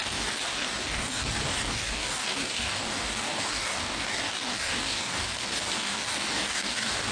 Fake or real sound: fake